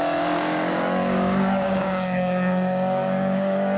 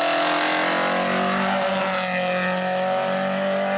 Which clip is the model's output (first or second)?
first